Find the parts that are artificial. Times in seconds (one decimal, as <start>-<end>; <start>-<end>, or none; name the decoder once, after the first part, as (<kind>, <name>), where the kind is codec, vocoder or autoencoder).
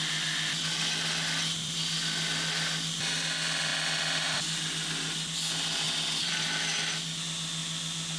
none